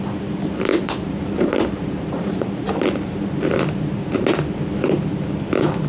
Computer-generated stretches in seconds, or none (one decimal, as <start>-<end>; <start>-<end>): 0.7-4.2